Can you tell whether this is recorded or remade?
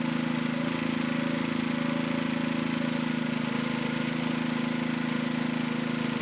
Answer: recorded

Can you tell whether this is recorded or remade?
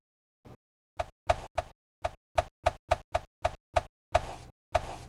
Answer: recorded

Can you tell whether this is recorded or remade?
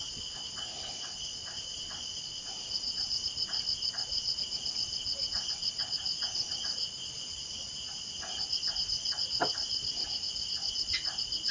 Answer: recorded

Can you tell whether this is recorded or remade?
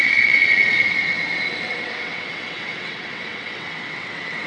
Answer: remade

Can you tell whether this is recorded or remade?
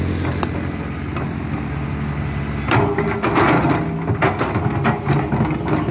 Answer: recorded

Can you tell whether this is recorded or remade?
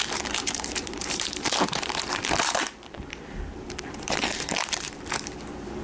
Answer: remade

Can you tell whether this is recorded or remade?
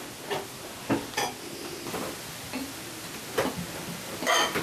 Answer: recorded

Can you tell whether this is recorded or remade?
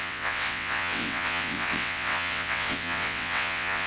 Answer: remade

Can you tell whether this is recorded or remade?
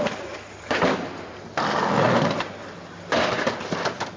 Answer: recorded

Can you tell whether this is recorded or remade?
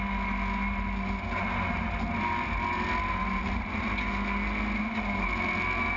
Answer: recorded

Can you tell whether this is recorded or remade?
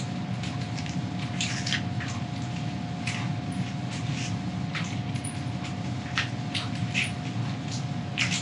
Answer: recorded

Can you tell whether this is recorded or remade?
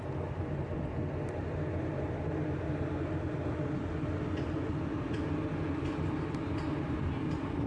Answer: recorded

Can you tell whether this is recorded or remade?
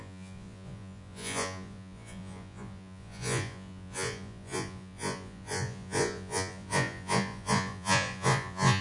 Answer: remade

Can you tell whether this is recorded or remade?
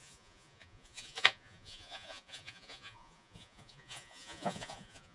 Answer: remade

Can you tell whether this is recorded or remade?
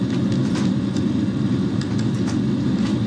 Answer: recorded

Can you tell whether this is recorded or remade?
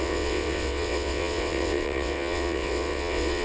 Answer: remade